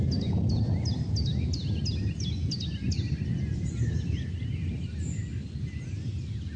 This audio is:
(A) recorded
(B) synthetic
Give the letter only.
A